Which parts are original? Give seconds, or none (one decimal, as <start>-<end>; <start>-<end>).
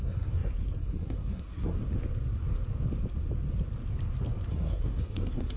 1.8-4.5